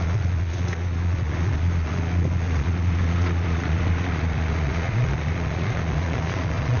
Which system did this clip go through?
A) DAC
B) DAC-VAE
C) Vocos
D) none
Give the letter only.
C